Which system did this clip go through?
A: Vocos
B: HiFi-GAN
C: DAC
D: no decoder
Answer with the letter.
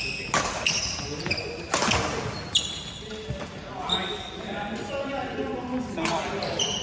D